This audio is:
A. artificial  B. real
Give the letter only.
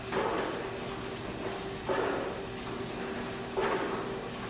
B